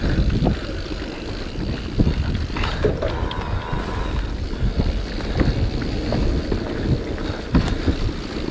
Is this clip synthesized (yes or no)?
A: no